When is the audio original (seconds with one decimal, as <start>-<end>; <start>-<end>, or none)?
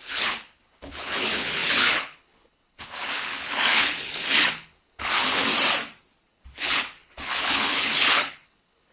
5.5-6.3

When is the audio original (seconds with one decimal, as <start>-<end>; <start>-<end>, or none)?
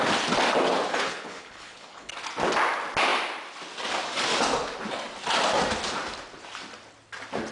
0.0-0.9; 2.1-7.5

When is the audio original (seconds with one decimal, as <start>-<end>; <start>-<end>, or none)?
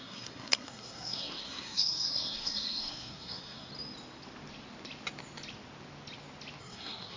3.7-6.6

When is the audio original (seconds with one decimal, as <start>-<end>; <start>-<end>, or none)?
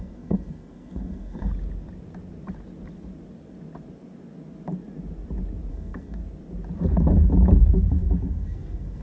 1.5-5.7; 6.2-7.9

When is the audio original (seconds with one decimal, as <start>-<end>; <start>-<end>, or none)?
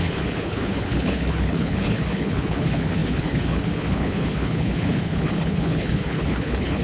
none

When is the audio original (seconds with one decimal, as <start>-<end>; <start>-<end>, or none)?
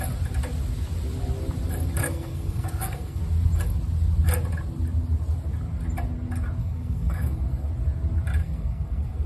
0.0-2.0; 3.2-6.6; 7.7-8.4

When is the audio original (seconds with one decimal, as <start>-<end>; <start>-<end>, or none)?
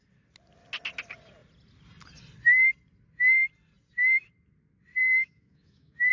0.0-5.0